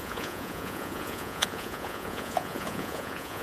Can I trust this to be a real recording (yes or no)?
no